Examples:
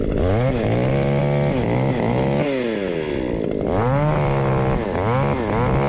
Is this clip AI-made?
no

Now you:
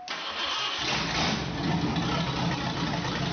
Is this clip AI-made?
no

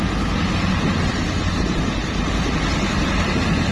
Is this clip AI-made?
no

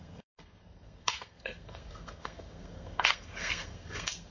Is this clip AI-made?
yes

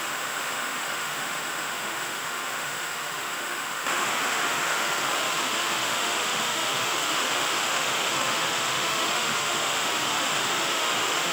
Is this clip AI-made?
yes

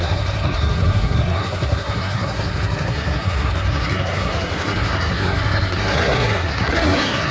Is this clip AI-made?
yes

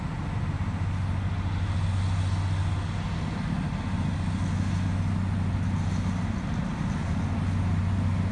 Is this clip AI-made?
no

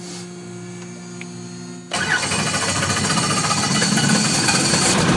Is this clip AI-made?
no